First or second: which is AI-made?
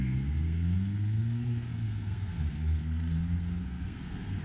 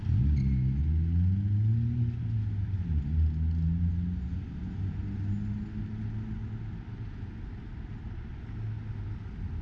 first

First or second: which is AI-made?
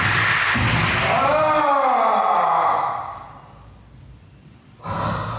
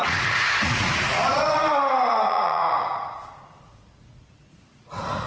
second